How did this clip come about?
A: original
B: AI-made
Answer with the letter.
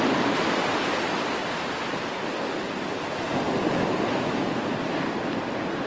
A